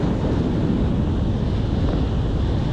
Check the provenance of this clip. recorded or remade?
recorded